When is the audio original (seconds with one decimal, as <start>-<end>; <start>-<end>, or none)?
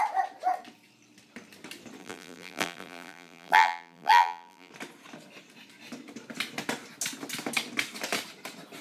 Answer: 0.0-2.0; 4.7-8.8